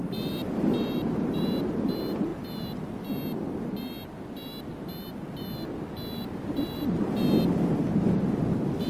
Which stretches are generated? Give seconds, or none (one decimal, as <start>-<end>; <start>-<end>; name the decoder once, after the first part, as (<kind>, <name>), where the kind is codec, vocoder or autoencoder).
0.4-1.4 (vocoder, BigVGAN v2)